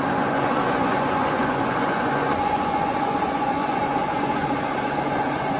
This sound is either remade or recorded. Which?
remade